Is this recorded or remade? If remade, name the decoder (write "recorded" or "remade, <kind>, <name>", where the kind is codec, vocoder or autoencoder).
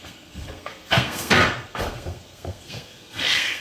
remade, codec, SNAC